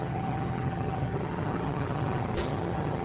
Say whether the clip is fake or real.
fake